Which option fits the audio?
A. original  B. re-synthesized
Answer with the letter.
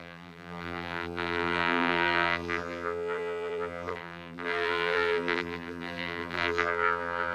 B